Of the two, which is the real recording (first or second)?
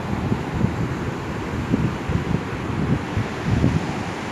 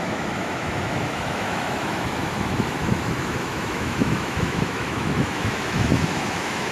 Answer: first